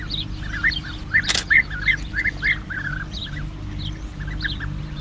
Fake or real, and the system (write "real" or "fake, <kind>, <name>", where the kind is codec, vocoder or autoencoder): real